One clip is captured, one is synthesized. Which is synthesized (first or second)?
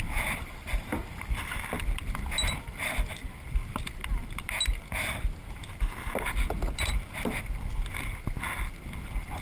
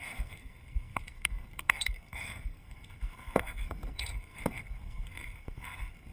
second